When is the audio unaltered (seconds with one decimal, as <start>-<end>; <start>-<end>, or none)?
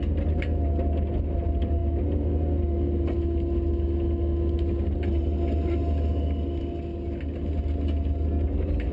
0.0-8.9